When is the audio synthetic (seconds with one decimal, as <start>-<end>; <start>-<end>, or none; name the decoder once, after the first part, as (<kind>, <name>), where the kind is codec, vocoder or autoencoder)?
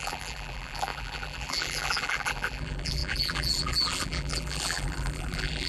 0.0-5.7 (vocoder, BigVGAN v2)